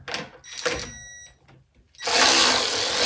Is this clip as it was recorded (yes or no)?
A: yes